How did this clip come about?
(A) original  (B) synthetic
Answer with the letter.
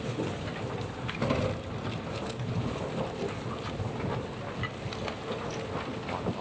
A